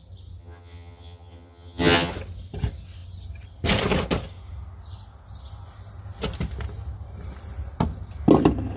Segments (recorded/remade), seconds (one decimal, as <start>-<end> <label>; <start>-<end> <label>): 0.0-0.4 recorded; 0.4-2.1 remade; 2.1-8.8 recorded